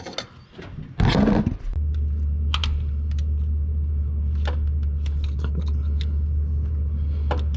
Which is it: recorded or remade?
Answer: recorded